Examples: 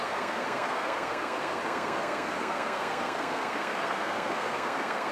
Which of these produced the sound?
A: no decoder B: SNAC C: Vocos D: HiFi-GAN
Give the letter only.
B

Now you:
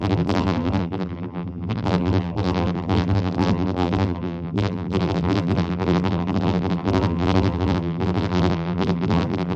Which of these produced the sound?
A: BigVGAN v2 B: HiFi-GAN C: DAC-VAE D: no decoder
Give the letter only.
A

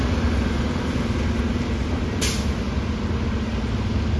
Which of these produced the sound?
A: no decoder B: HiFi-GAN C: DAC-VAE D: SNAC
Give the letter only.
A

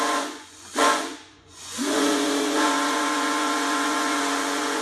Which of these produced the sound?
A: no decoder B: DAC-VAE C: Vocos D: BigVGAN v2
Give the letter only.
C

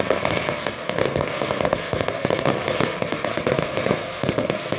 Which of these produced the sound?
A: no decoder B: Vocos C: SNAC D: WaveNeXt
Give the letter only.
C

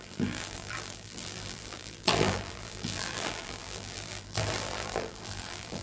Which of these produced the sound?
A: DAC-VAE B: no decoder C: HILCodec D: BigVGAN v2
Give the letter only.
D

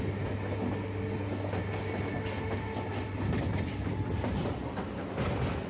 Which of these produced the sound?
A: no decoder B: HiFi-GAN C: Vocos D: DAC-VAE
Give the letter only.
A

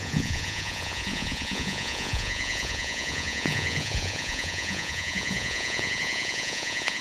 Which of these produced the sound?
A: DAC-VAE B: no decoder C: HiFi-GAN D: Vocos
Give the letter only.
D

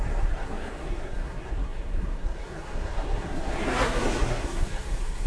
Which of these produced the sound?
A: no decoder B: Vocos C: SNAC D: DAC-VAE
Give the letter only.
C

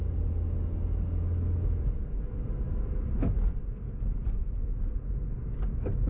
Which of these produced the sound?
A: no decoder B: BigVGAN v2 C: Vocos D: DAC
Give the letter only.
A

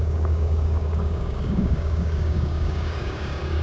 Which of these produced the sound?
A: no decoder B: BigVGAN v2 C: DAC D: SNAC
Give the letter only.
C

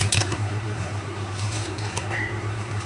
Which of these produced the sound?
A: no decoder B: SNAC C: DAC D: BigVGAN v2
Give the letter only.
B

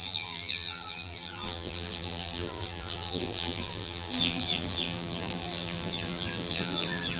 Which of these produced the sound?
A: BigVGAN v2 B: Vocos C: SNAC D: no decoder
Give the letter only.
A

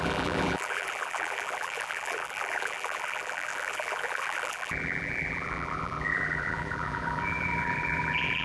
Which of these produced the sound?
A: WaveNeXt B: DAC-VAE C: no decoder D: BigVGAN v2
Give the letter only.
D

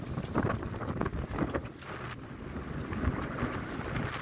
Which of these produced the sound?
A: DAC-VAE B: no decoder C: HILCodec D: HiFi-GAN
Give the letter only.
B